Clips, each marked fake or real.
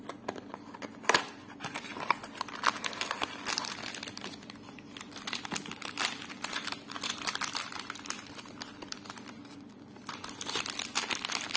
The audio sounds real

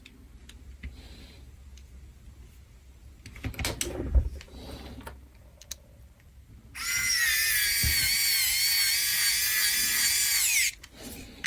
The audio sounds real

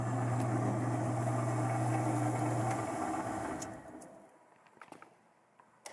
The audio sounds real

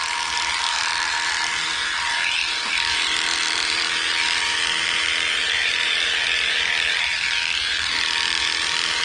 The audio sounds fake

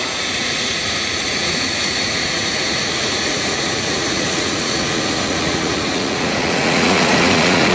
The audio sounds fake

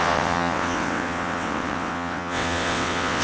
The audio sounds fake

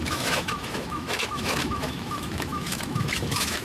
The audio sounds fake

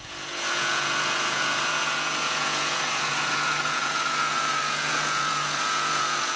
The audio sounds fake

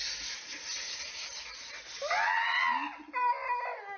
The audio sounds real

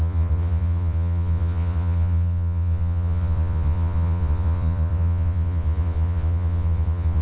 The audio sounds fake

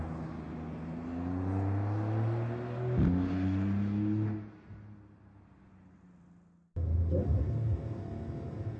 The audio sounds real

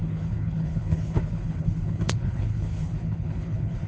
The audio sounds fake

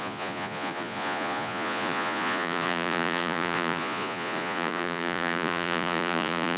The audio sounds fake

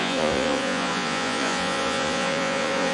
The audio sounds fake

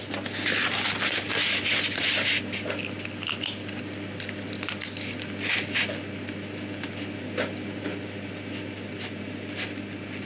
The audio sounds real